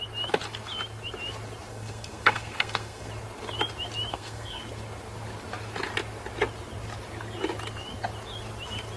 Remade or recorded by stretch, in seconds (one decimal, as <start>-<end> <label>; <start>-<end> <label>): 0.0-1.7 recorded; 1.7-3.1 remade; 3.1-4.1 recorded; 4.1-4.6 remade; 4.6-9.0 recorded